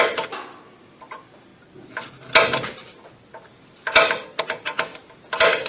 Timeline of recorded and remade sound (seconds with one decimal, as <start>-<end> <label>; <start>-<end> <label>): 0.0-4.9 recorded; 4.9-5.7 remade